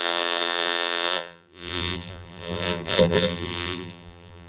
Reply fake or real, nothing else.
fake